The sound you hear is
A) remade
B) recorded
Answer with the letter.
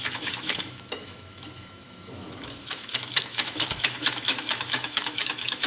A